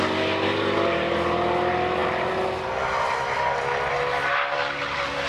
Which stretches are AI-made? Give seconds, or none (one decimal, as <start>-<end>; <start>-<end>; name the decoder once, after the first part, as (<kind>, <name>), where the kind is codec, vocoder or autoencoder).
none